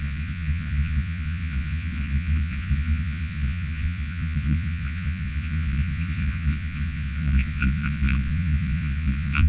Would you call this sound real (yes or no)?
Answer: no